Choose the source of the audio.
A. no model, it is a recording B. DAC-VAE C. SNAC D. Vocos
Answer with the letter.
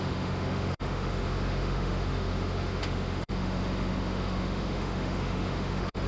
B